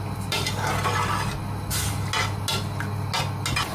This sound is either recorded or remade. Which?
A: recorded